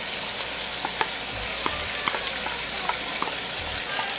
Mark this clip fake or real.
real